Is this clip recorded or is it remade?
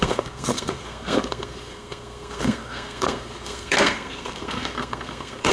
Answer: remade